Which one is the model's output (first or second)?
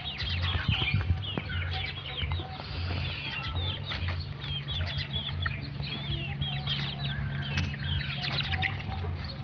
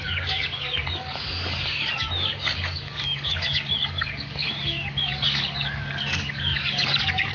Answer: second